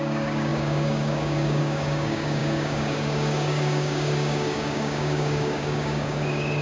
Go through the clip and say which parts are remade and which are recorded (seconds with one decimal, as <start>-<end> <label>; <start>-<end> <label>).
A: 0.0-6.6 remade